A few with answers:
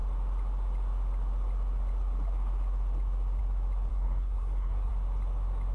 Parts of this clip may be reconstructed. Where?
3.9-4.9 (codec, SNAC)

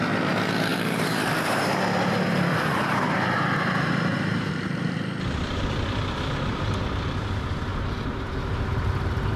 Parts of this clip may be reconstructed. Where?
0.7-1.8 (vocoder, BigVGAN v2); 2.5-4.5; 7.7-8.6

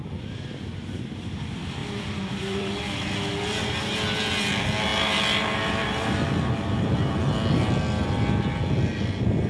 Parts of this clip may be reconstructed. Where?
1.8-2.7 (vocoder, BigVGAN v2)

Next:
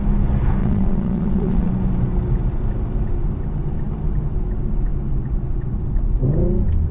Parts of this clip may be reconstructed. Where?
0.6-1.7 (vocoder, Vocos)

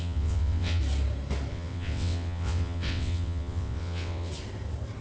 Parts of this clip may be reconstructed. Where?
0.0-0.8 (vocoder, WaveNeXt); 1.5-4.3